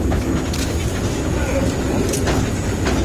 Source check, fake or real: real